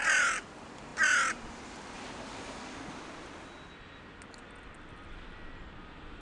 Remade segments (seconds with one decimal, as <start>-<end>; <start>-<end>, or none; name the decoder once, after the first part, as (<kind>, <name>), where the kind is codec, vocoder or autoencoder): none